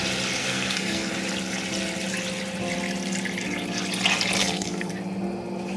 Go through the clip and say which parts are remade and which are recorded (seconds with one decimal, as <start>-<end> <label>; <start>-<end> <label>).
0.0-0.4 recorded; 0.4-1.1 remade; 1.1-4.4 recorded; 4.4-4.9 remade; 4.9-5.8 recorded